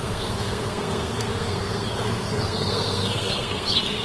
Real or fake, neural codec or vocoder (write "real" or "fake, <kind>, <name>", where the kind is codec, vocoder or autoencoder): fake, codec, SNAC